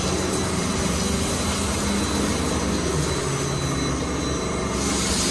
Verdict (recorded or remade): recorded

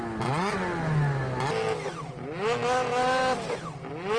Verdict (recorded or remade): recorded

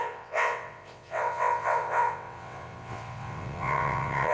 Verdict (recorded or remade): remade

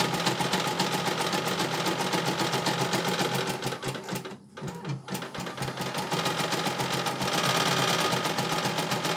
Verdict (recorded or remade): recorded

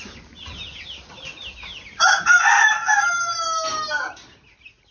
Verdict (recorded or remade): recorded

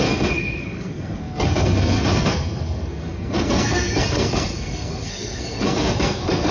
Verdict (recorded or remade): remade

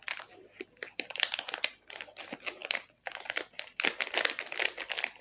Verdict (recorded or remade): recorded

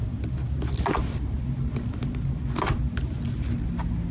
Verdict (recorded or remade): recorded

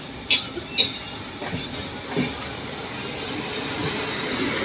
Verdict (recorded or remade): recorded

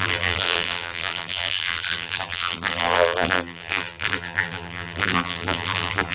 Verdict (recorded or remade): remade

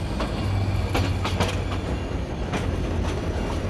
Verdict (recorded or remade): recorded